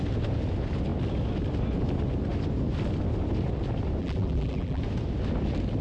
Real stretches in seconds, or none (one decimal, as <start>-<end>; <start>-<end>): 0.0-4.0; 4.8-5.8